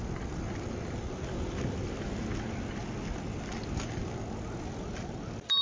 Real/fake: real